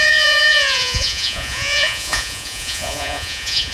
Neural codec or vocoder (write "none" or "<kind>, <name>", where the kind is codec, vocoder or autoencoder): vocoder, Vocos